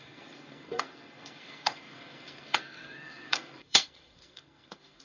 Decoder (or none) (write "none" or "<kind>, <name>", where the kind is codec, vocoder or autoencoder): codec, SNAC